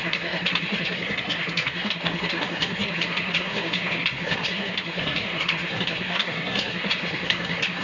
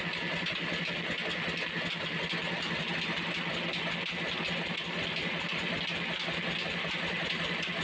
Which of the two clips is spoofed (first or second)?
first